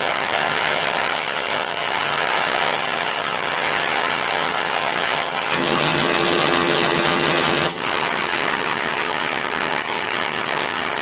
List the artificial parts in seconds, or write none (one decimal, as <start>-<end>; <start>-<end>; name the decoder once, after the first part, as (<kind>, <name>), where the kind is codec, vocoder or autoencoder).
0.0-11.0 (vocoder, HiFi-GAN)